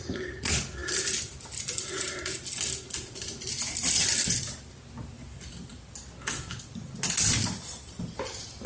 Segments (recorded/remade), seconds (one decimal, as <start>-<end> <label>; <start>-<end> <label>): 0.0-8.7 recorded